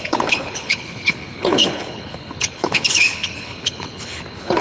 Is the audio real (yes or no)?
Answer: no